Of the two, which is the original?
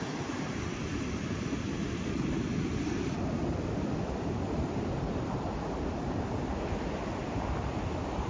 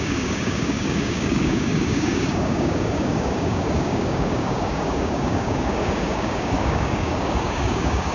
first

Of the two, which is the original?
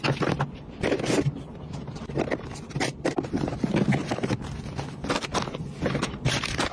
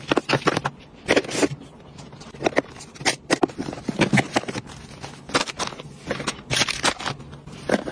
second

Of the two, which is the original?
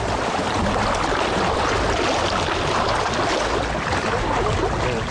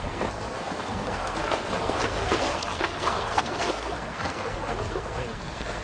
first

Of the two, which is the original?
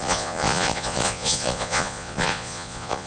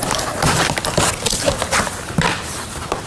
second